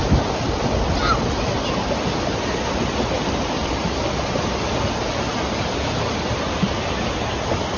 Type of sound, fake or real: real